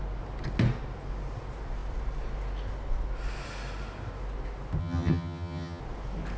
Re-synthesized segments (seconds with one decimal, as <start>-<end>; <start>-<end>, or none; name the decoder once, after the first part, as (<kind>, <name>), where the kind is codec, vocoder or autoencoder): 4.8-5.8 (vocoder, HiFi-GAN)